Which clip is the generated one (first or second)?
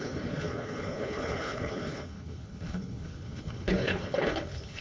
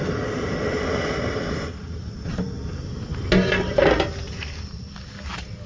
first